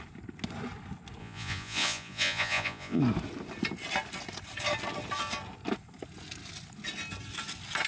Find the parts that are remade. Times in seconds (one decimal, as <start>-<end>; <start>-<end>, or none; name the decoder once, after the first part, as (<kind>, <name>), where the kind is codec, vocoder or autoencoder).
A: 1.2-3.0 (vocoder, Vocos)